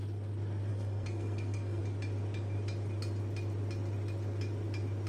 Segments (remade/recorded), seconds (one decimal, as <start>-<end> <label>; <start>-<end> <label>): 0.0-0.7 recorded; 0.7-1.8 remade; 1.8-5.1 recorded